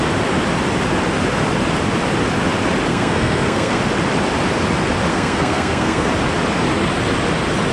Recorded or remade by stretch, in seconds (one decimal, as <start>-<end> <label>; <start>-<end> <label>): 0.0-2.9 recorded; 2.9-3.8 remade; 3.8-5.1 recorded; 5.1-6.1 remade; 6.1-7.7 recorded